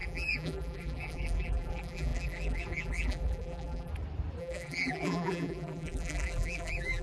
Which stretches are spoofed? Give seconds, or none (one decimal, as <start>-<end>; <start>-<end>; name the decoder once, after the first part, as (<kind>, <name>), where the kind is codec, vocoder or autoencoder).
0.0-3.9 (vocoder, BigVGAN v2); 4.4-7.0